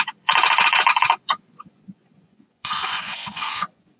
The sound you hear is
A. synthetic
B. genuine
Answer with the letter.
A